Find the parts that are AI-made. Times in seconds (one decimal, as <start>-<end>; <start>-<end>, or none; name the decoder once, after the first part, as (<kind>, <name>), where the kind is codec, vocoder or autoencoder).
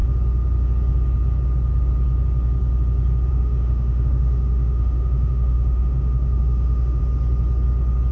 3.3-7.0 (autoencoder, DAC-VAE)